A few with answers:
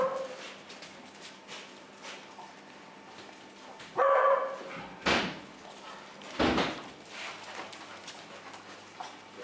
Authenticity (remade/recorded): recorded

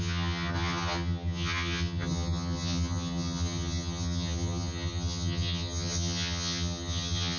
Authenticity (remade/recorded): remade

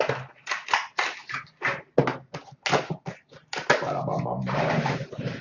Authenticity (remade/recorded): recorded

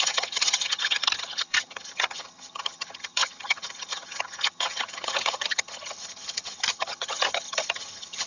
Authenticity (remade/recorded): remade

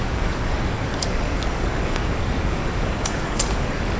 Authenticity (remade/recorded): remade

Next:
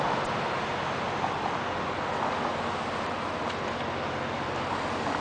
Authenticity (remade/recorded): recorded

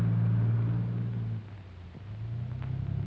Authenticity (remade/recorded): recorded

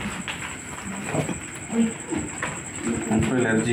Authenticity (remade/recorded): recorded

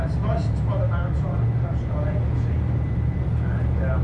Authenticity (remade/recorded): recorded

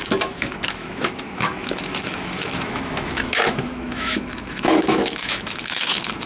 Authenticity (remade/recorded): remade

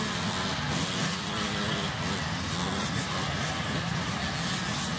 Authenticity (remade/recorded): recorded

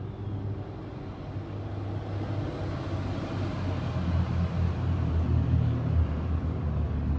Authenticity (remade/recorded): recorded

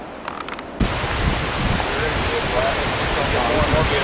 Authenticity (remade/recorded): recorded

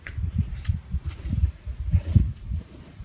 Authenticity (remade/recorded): remade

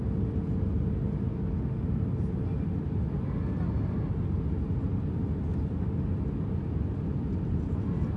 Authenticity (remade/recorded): recorded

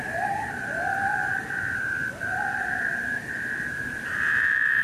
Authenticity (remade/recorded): remade